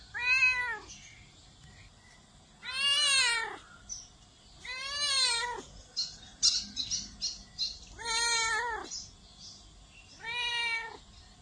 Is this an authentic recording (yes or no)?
yes